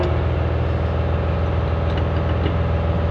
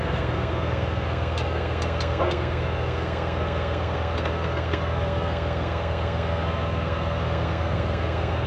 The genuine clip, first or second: first